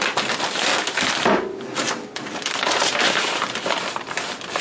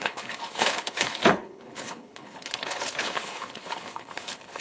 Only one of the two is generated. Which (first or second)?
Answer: second